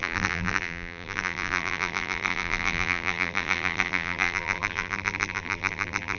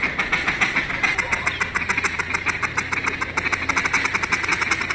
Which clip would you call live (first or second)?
second